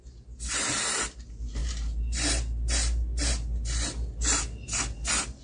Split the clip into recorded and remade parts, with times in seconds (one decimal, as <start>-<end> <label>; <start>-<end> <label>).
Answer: 0.0-5.4 recorded